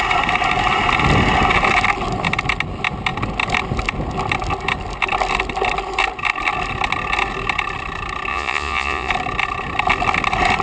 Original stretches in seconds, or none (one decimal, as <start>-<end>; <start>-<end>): 0.0-8.3; 9.1-10.6